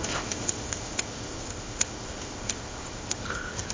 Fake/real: fake